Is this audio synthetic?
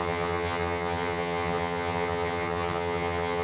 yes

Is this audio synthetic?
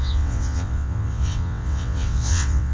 yes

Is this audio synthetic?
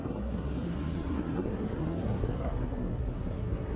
yes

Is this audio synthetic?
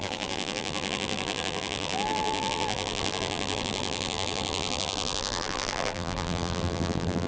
yes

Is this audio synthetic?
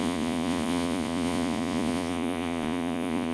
yes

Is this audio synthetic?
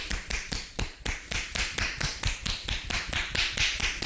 no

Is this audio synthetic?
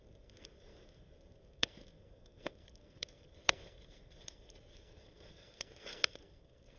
yes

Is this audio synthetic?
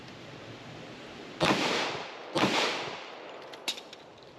yes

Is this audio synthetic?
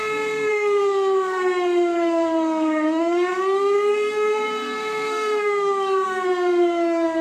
yes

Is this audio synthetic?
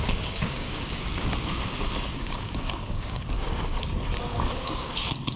yes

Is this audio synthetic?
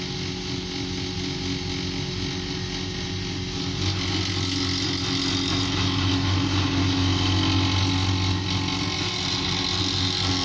no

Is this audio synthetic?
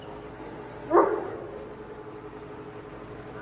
no